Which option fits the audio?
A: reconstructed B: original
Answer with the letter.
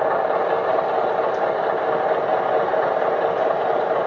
B